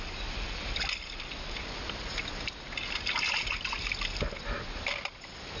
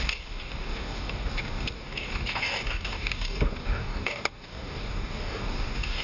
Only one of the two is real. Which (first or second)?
first